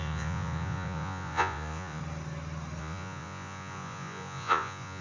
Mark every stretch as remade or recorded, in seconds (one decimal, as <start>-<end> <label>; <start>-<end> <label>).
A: 0.0-2.0 remade; 2.0-2.8 recorded; 2.8-5.0 remade